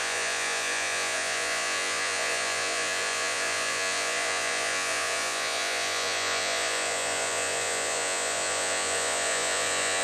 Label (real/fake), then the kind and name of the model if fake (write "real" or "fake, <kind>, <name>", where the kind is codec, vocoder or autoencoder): fake, vocoder, Vocos